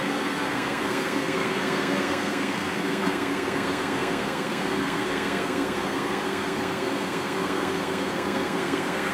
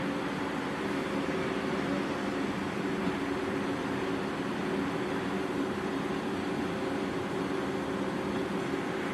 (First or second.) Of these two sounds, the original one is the second